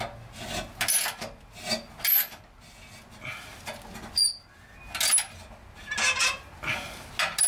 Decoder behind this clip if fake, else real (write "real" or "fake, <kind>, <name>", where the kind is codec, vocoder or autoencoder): real